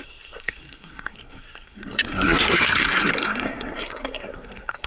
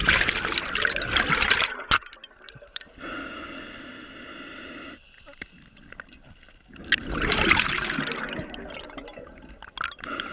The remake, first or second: first